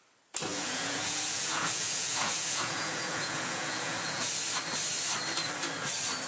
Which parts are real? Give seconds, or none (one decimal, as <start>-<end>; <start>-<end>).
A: 0.0-0.5; 4.3-6.3